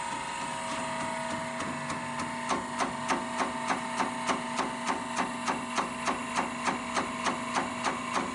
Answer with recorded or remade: recorded